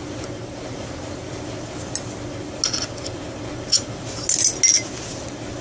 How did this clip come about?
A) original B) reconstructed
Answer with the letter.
A